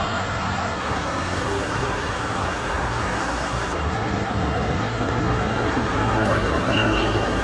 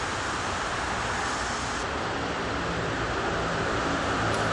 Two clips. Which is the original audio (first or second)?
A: second